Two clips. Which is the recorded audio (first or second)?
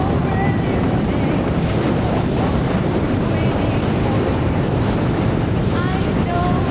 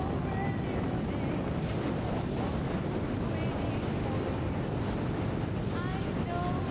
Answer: second